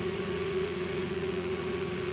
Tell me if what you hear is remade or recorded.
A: remade